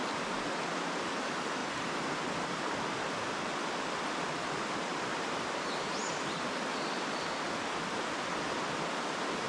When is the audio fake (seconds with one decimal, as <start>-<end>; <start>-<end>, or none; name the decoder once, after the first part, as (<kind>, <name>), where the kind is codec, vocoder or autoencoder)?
1.6-2.7 (vocoder, BigVGAN v2); 4.9-6.1